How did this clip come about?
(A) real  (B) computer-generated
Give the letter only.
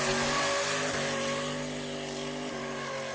A